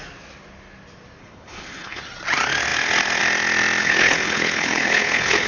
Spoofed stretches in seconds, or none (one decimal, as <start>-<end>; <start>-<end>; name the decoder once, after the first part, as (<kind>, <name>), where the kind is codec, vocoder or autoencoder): 1.2-2.0 (codec, HILCodec); 3.8-5.5